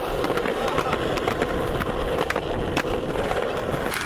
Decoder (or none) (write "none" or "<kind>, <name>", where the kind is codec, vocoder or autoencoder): none